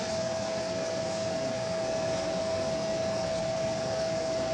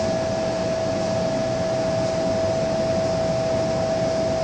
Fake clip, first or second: first